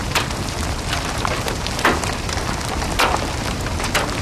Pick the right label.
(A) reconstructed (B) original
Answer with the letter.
A